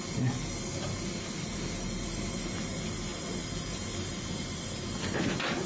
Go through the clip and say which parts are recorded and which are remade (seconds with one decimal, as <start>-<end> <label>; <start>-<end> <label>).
0.0-5.7 recorded